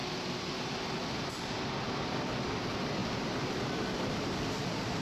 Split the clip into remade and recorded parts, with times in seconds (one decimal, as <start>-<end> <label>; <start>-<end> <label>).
0.0-3.0 recorded; 3.0-5.0 remade